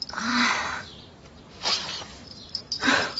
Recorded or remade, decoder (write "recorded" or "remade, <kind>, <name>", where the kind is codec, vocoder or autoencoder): remade, vocoder, BigVGAN v2